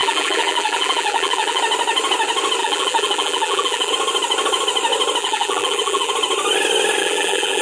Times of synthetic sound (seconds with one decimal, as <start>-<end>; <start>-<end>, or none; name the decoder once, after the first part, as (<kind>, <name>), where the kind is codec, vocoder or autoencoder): 0.0-1.6 (vocoder, BigVGAN v2); 2.6-3.9; 5.2-6.1; 7.0-7.6